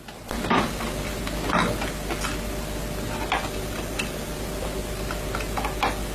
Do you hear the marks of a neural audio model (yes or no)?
no